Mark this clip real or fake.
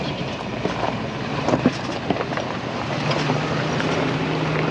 real